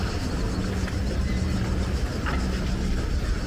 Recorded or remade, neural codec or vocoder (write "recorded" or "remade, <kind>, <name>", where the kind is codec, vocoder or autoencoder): recorded